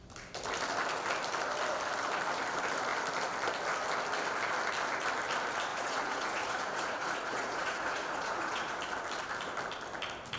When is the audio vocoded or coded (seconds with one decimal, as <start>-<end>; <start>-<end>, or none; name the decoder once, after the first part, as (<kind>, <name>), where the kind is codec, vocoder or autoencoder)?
5.7-8.8 (vocoder, Vocos)